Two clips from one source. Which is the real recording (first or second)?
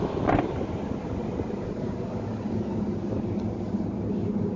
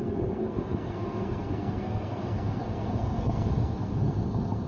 first